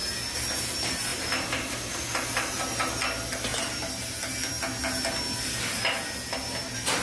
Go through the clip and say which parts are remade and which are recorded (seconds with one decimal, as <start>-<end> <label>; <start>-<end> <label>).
0.0-1.1 recorded; 1.1-2.6 remade; 2.6-7.0 recorded